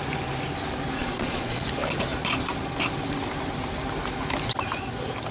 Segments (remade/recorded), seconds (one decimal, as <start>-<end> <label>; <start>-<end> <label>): 0.0-1.0 recorded; 1.0-1.6 remade; 1.6-5.3 recorded